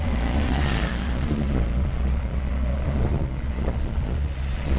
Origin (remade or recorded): remade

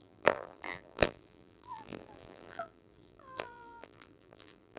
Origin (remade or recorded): remade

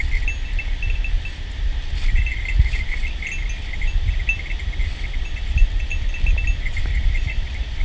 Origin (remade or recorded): recorded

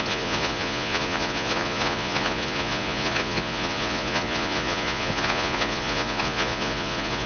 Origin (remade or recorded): remade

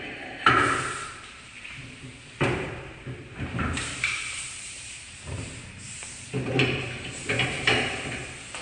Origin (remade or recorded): remade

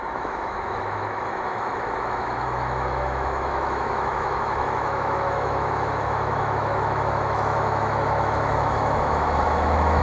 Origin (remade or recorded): remade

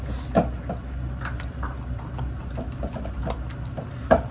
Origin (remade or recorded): recorded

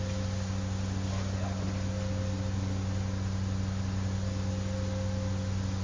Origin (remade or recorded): recorded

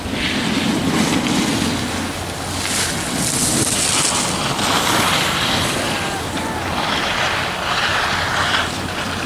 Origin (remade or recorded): recorded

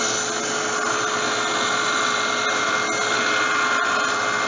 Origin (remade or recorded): recorded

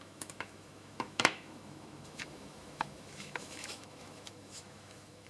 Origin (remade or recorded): remade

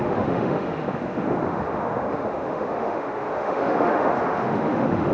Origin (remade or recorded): remade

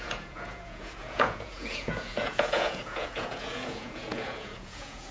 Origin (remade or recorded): remade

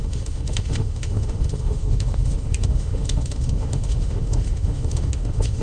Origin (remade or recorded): remade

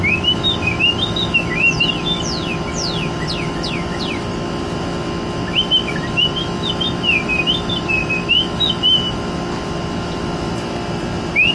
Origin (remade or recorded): recorded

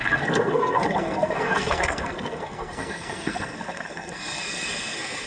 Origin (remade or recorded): remade